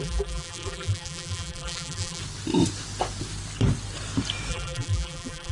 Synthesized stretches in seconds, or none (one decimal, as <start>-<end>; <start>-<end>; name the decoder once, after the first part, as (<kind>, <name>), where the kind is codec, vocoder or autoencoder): 0.0-2.2 (vocoder, BigVGAN v2); 4.5-5.5